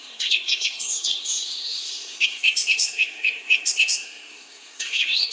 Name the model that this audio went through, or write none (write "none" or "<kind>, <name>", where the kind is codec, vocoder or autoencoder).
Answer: codec, SNAC